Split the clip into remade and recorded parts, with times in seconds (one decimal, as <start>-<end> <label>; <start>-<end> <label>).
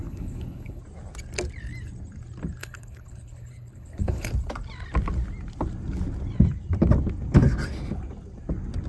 0.0-0.8 remade; 0.8-2.6 recorded; 2.6-4.3 remade; 4.3-8.9 recorded